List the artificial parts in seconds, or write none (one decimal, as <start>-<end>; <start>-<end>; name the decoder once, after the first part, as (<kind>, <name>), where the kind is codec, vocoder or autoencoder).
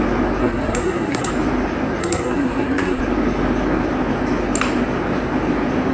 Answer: 0.4-1.3 (codec, SNAC); 2.0-3.0